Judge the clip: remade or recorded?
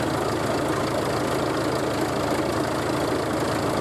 recorded